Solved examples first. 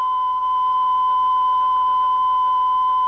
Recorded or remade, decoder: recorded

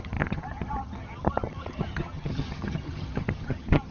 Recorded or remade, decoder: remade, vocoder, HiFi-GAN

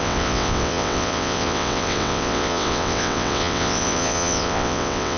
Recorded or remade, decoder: remade, vocoder, WaveNeXt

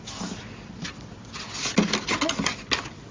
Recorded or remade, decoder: recorded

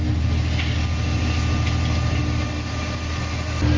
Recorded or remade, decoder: recorded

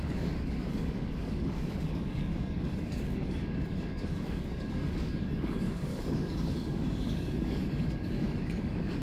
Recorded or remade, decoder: remade, codec, DAC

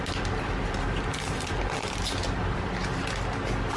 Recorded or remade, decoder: recorded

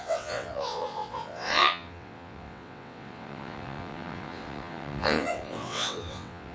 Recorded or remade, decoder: remade, vocoder, WaveNeXt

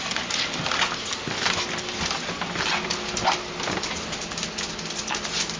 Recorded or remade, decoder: recorded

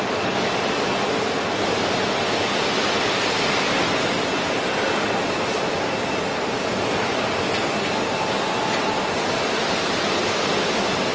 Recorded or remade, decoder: recorded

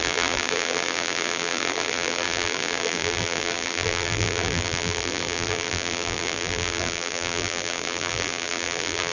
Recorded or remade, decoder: remade, vocoder, BigVGAN v2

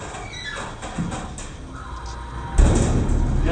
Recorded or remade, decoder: recorded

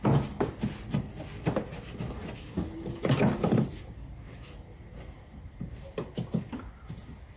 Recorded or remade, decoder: recorded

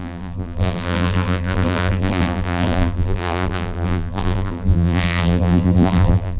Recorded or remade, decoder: remade, vocoder, BigVGAN v2